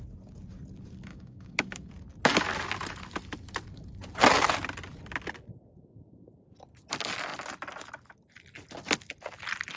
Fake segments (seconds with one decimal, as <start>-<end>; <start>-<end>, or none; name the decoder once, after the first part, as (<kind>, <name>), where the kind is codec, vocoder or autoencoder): 1.1-1.9 (codec, DAC)